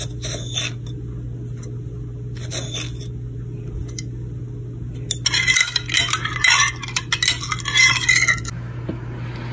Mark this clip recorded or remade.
recorded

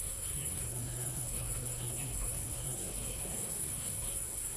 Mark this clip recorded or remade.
remade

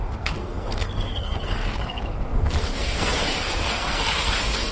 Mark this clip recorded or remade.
remade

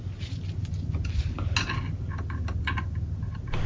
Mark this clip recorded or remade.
recorded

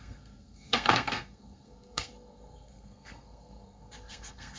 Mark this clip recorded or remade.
remade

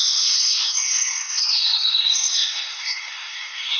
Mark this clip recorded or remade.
remade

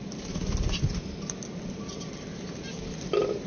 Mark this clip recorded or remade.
recorded